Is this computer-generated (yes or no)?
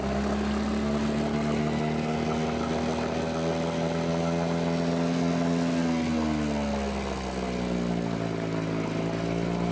no